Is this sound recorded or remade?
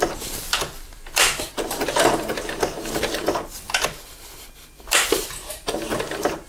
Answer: remade